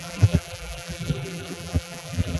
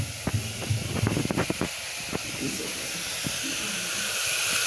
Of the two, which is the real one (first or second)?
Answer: second